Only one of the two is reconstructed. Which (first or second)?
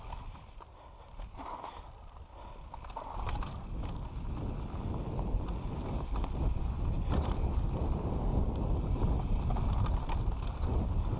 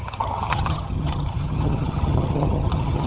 second